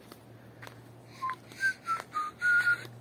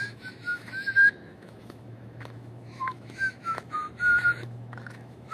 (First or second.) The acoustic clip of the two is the first